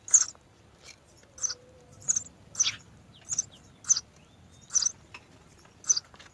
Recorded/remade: recorded